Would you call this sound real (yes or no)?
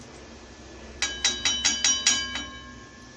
yes